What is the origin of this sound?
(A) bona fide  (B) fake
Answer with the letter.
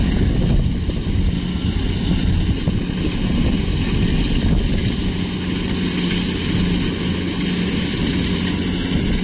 A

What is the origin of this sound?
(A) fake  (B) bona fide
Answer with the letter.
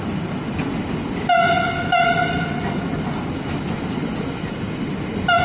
B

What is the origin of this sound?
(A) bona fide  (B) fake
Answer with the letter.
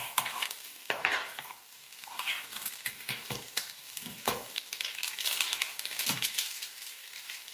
B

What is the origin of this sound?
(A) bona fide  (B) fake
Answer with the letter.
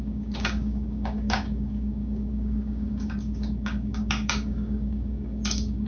B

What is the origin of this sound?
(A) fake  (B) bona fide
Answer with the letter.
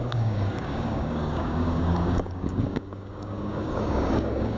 A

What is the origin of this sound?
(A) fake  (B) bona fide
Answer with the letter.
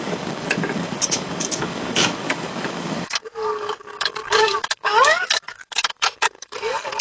A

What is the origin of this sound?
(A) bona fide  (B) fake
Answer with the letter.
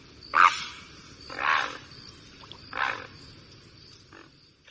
A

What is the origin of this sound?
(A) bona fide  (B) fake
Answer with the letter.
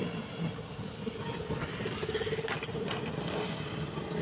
A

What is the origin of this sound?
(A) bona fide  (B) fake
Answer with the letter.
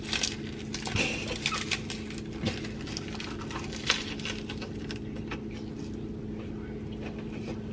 A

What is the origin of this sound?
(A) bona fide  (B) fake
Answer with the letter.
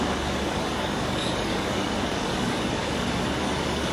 B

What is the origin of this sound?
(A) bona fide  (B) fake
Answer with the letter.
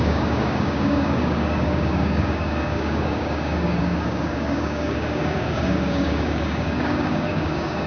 B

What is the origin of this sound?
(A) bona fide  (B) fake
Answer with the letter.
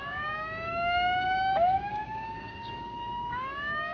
B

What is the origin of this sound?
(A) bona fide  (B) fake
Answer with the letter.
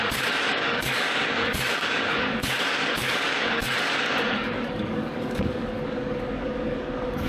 B